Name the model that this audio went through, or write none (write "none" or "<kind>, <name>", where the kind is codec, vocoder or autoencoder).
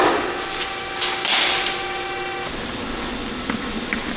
none